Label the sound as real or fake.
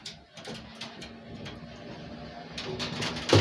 real